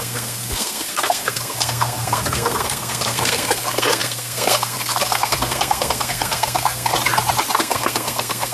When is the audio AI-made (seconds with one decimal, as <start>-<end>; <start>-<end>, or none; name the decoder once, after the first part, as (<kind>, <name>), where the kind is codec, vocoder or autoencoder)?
0.0-6.9 (codec, SNAC); 7.6-8.5